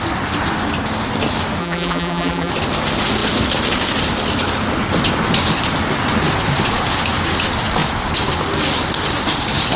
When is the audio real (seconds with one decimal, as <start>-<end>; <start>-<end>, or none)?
0.0-1.6; 2.5-9.8